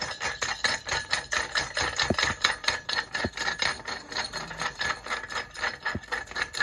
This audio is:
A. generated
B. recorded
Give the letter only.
B